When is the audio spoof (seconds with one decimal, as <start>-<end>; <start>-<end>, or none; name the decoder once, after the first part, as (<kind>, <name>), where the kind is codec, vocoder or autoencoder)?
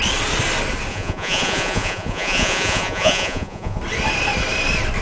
0.9-3.8 (vocoder, Vocos)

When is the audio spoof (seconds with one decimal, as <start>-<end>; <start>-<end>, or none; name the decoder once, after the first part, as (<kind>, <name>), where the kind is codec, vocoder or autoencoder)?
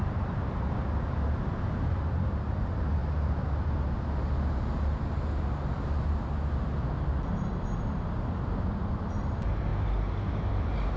none